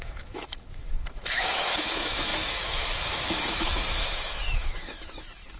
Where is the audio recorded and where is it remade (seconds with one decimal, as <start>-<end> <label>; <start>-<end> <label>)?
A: 0.0-5.6 remade